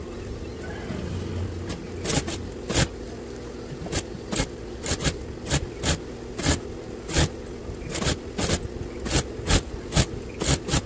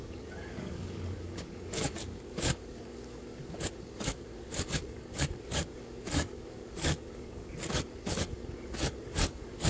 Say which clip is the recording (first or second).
first